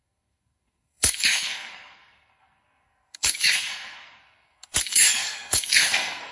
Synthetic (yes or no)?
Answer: yes